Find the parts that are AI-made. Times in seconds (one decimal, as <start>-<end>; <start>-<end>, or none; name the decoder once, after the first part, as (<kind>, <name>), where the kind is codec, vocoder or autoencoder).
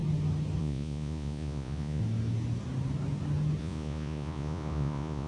0.6-2.0 (vocoder, Vocos); 3.6-5.3